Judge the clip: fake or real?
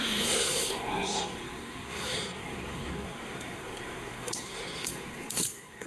fake